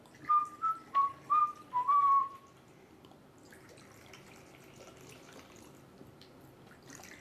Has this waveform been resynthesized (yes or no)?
yes